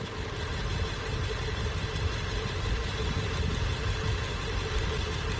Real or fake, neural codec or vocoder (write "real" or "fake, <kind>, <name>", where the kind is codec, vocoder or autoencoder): fake, vocoder, BigVGAN v2